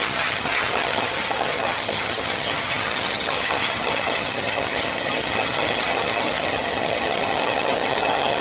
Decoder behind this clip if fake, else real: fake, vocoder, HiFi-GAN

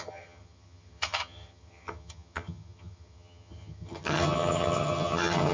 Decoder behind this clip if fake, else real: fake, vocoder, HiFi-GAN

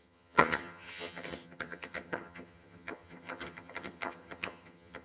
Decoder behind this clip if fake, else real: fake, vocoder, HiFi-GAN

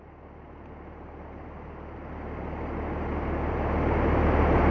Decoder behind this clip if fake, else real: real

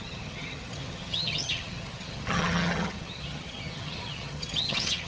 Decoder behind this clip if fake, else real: fake, vocoder, HiFi-GAN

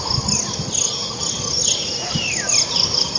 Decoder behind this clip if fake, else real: real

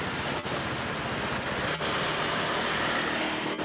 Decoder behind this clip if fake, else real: real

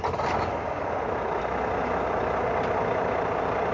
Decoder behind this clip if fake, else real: real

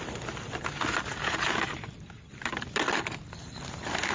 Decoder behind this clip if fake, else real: real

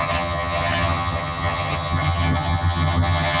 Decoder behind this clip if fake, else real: fake, vocoder, HiFi-GAN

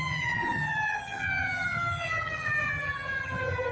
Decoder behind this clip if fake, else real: fake, vocoder, HiFi-GAN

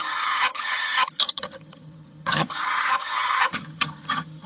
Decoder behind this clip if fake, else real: fake, vocoder, HiFi-GAN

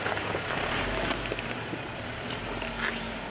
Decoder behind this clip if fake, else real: real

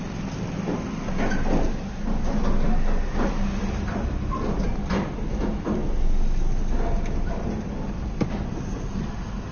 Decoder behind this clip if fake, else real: real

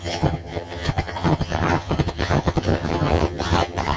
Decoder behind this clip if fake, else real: fake, vocoder, HiFi-GAN